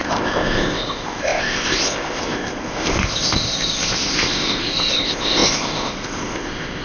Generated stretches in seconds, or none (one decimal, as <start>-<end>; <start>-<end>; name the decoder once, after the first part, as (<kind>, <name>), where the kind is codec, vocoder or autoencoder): 0.0-6.8 (codec, ZipCodec)